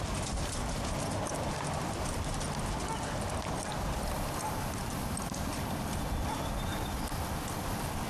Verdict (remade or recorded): remade